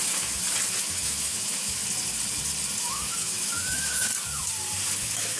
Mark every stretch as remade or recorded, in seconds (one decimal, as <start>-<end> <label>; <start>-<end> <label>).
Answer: 0.0-0.4 remade; 0.4-0.9 recorded; 0.9-1.8 remade; 1.8-2.8 recorded; 2.8-4.1 remade; 4.1-5.0 recorded; 5.0-5.4 remade